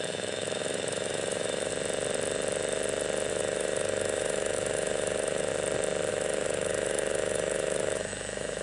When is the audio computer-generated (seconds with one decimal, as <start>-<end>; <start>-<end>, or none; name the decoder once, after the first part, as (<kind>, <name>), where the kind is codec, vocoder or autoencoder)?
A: 0.0-1.7 (autoencoder, DAC-VAE); 3.3-5.5; 6.1-8.6